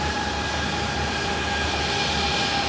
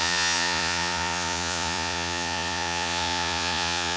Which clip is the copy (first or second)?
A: second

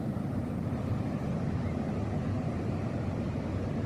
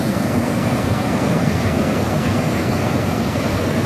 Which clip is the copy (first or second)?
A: second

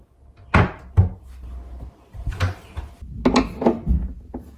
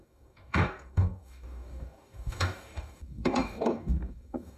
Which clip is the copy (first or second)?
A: second